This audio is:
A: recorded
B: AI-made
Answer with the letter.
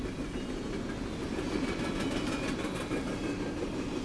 A